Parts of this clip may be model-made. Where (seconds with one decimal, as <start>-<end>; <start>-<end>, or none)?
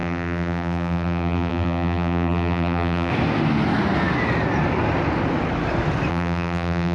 0.0-3.1; 6.1-6.9